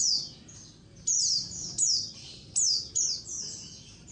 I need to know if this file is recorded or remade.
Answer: recorded